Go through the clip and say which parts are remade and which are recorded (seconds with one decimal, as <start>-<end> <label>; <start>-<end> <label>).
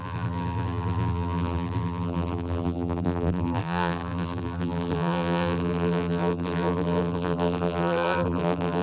0.0-8.8 remade